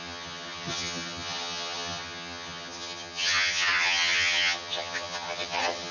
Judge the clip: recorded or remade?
remade